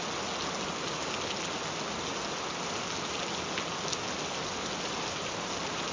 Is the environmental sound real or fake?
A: real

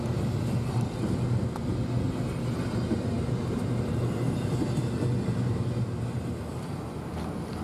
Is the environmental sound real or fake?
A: real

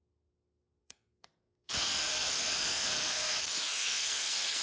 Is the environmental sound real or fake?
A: fake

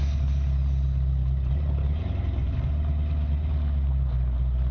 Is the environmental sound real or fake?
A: real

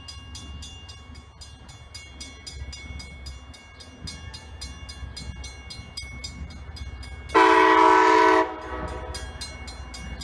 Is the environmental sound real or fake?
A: real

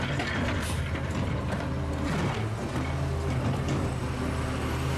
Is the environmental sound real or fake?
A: real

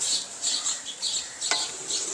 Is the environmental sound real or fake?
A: fake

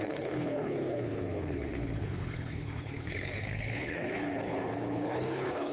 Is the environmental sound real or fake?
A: fake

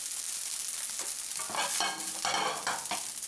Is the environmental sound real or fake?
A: real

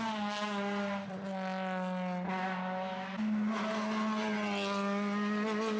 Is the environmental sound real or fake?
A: real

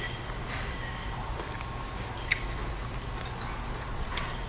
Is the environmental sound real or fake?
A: real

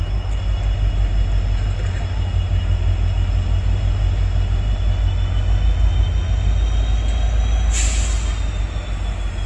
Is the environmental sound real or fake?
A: real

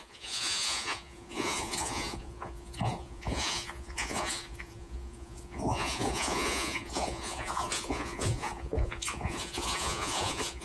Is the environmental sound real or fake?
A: fake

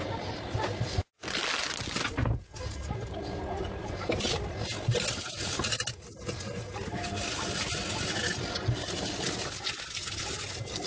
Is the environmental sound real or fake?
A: real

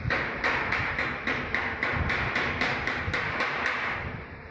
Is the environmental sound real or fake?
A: fake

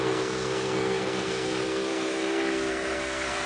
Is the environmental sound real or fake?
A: fake